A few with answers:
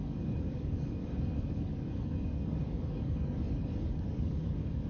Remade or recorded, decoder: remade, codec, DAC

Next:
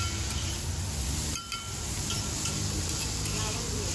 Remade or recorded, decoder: recorded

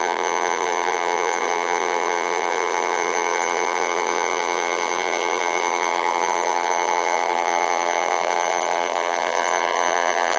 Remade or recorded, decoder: remade, vocoder, BigVGAN v2